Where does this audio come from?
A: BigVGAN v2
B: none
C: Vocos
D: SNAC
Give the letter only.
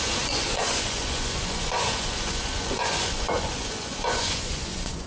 C